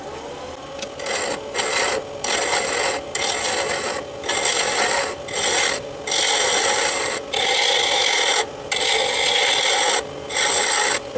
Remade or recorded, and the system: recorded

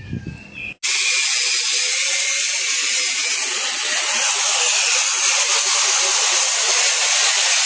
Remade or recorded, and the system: recorded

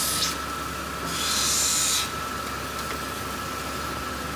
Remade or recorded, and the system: recorded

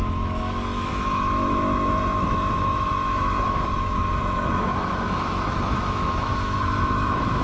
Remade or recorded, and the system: remade, autoencoder, DAC-VAE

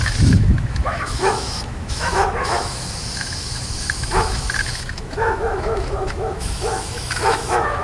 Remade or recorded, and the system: remade, autoencoder, DAC-VAE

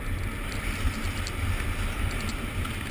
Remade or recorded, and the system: recorded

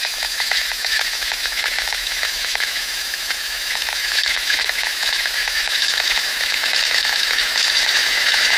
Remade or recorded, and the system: remade, autoencoder, DAC-VAE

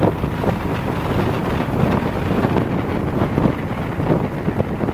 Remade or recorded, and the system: recorded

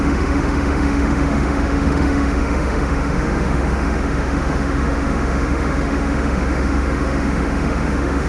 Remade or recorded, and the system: remade, autoencoder, DAC-VAE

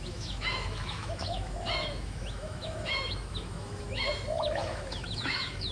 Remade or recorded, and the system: remade, autoencoder, DAC-VAE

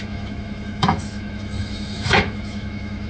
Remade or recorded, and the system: remade, autoencoder, DAC-VAE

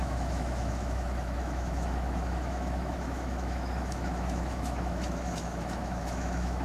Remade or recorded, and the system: remade, autoencoder, DAC-VAE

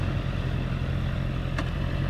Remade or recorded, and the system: recorded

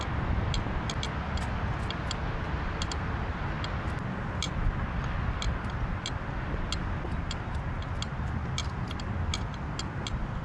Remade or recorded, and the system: recorded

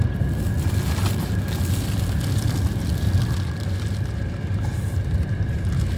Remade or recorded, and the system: recorded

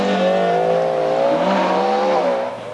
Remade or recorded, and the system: recorded